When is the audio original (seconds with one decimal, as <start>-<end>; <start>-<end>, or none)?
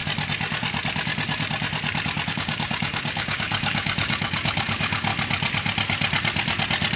0.0-2.3; 5.1-7.0